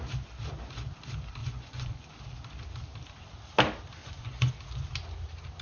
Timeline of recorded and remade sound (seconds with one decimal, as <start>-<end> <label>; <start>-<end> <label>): 0.0-1.4 recorded; 1.4-2.1 remade; 2.1-4.0 recorded; 4.0-4.5 remade; 4.5-5.6 recorded